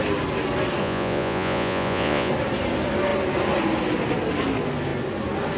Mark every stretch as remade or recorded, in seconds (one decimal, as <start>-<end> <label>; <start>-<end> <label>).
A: 0.0-0.8 recorded; 0.8-2.3 remade; 2.3-5.6 recorded